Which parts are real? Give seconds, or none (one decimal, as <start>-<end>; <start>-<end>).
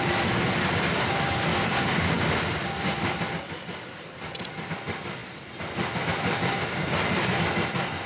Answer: 0.0-1.5; 2.2-8.1